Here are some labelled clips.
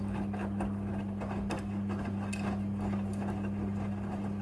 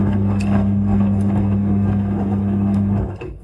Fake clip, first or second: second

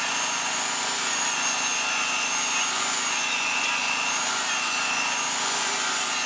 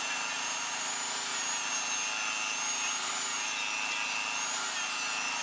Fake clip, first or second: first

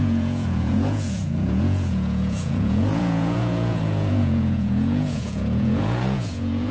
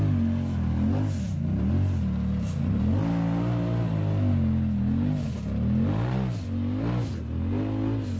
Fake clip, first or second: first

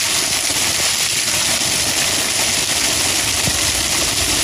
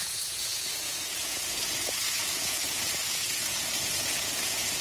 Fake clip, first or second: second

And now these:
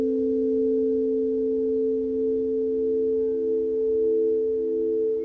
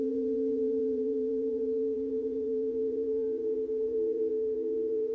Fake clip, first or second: second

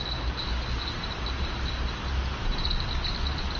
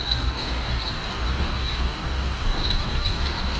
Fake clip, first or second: second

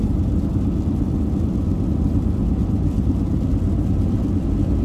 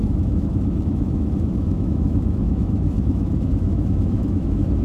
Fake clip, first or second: second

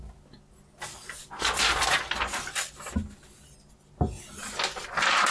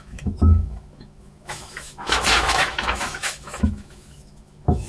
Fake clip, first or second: second